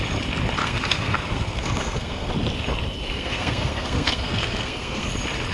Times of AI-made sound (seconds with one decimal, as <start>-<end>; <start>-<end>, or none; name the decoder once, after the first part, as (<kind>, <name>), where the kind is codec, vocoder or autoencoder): 0.6-2.3 (codec, SNAC); 3.1-5.1